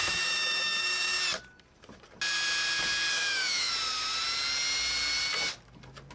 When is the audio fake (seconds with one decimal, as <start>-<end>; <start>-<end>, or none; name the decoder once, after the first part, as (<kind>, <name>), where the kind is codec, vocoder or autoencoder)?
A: 0.0-1.2 (autoencoder, DAC-VAE); 3.1-3.7